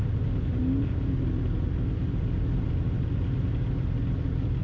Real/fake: real